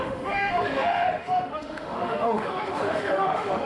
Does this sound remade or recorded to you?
remade